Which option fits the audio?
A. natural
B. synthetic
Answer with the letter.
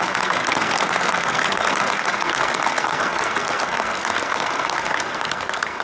B